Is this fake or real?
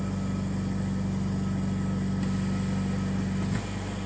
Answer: real